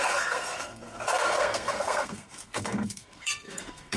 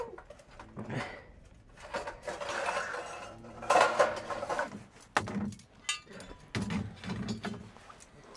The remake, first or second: first